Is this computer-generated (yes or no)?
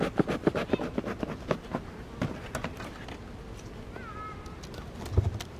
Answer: no